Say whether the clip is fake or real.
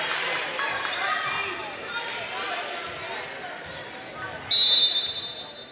real